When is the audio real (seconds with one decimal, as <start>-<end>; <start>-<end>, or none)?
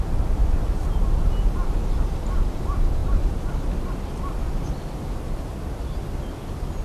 0.0-6.8